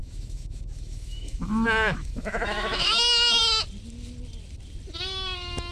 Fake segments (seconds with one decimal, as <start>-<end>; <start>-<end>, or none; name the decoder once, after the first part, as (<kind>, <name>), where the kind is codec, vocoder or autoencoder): 0.0-3.4 (autoencoder, DAC-VAE)